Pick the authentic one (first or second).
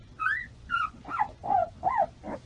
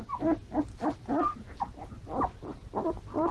second